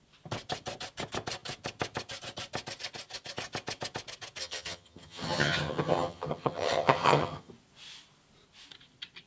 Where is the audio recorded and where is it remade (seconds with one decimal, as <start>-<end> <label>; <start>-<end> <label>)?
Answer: 0.0-4.4 recorded; 4.4-7.5 remade; 7.5-9.3 recorded